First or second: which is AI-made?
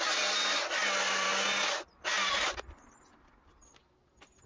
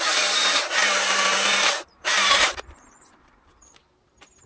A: second